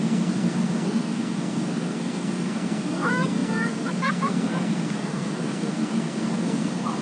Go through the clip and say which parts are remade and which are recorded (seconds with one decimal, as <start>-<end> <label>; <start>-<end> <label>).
0.0-7.0 remade